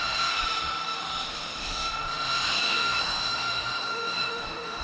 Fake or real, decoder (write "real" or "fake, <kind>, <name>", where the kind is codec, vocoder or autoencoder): fake, autoencoder, DAC-VAE